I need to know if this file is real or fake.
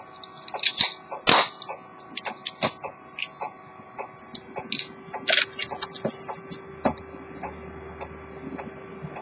real